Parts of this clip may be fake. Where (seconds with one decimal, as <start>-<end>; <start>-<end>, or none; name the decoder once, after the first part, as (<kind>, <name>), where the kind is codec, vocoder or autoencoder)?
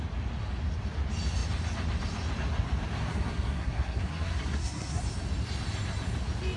3.1-5.0 (codec, SNAC)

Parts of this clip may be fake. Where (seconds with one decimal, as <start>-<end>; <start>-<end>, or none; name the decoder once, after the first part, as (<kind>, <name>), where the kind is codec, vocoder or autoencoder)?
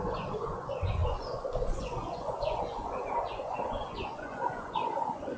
0.0-5.4 (vocoder, Vocos)